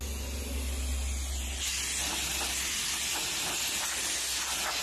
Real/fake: real